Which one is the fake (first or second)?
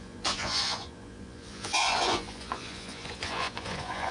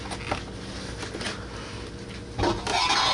first